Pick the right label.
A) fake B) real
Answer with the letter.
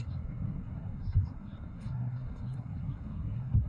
A